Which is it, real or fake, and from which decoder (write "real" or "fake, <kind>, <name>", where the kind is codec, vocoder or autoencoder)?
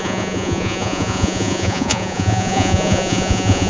fake, vocoder, Vocos